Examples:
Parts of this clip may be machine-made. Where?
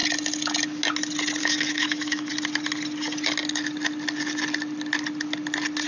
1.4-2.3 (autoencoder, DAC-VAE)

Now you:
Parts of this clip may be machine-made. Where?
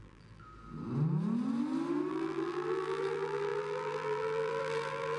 0.0-0.4 (vocoder, BigVGAN v2); 2.1-5.2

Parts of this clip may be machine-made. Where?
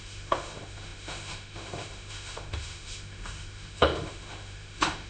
0.0-5.1 (autoencoder, DAC-VAE)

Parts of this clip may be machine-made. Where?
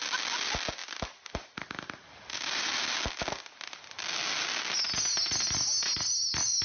none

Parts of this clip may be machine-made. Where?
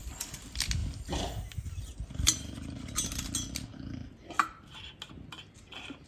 none